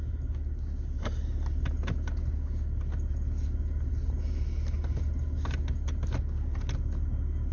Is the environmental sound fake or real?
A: real